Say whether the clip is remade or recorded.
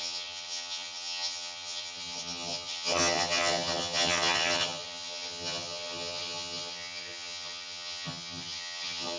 remade